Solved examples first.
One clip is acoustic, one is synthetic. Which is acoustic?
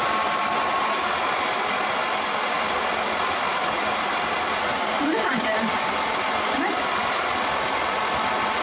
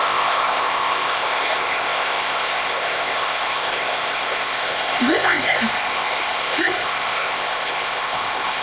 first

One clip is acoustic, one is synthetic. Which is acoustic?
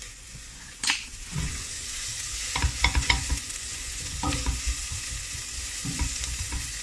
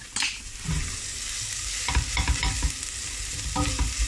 second